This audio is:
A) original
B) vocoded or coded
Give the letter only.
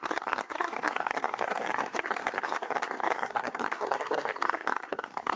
B